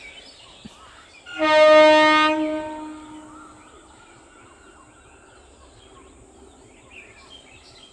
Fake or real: real